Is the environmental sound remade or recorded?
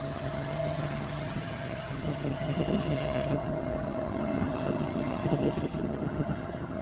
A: remade